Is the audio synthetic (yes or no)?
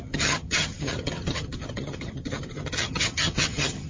yes